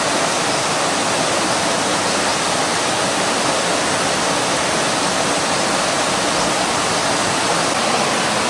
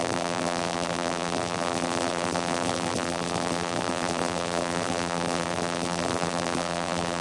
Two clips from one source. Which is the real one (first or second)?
first